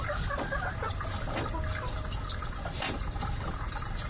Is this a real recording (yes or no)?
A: yes